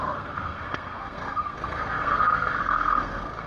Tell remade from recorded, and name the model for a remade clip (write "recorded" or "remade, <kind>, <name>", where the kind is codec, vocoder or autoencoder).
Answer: remade, codec, SNAC